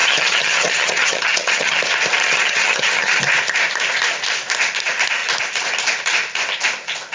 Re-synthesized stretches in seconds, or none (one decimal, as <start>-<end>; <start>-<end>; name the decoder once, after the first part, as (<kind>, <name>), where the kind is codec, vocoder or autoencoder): 0.0-1.8 (vocoder, HiFi-GAN); 2.2-3.2